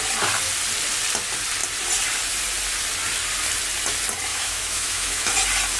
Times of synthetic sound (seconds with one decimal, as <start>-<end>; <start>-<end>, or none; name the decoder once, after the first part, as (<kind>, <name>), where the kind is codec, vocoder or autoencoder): 4.3-5.3 (autoencoder, DAC-VAE)